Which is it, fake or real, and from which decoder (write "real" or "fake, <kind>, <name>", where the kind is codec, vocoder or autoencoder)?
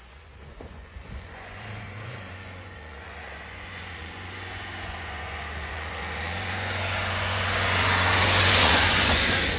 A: fake, vocoder, Vocos